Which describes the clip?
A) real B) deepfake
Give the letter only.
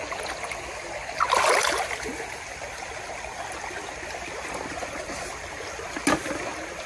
A